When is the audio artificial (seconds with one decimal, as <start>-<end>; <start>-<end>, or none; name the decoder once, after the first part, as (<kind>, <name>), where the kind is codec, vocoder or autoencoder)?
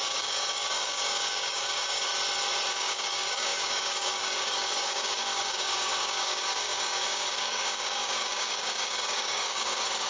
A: 0.0-2.1 (codec, DAC); 2.7-10.1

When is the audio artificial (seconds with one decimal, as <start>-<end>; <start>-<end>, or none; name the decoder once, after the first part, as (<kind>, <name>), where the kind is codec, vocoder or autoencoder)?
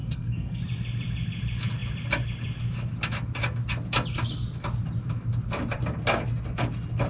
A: 0.0-0.6 (codec, SNAC)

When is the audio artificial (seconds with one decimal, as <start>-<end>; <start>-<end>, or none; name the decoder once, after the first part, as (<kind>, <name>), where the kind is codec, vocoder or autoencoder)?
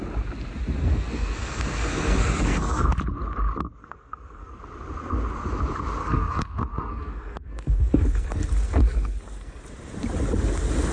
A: 0.8-2.9 (codec, SNAC); 3.8-4.6; 6.0-9.6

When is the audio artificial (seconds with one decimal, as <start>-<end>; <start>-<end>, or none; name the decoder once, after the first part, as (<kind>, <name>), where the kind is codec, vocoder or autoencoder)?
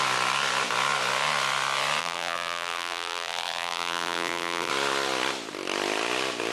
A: 2.0-4.7 (vocoder, BigVGAN v2)